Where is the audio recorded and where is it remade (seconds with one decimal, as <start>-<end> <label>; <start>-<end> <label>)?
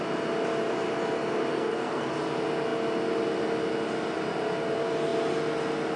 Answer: 0.0-1.5 recorded; 1.5-2.1 remade; 2.1-6.0 recorded